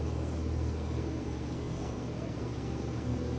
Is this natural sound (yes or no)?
no